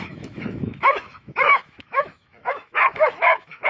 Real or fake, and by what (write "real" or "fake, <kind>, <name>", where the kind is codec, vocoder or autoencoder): fake, autoencoder, DAC-VAE